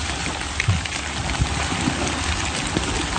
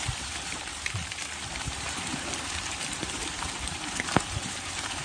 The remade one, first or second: second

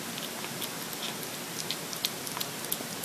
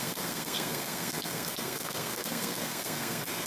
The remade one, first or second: second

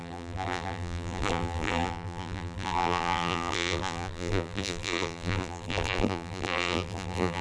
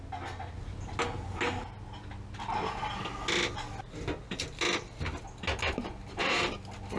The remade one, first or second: first